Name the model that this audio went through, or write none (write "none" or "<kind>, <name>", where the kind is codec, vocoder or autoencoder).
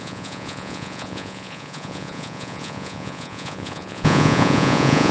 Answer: vocoder, Vocos